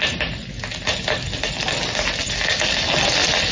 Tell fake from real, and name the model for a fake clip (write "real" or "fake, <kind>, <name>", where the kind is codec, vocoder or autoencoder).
real